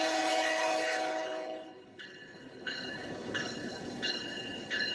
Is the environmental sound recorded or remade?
remade